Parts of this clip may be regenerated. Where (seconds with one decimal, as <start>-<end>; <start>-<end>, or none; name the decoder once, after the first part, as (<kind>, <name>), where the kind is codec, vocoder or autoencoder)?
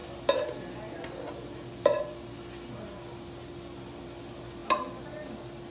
none